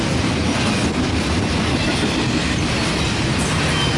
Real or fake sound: real